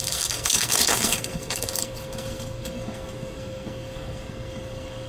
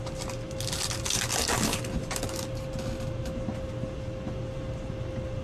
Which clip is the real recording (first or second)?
second